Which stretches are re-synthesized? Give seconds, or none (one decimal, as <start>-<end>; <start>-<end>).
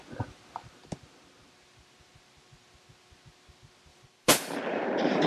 3.9-5.3